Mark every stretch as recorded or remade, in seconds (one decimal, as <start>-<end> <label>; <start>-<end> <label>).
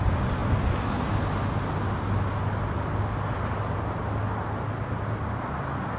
0.0-6.0 recorded